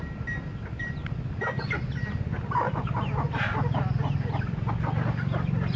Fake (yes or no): no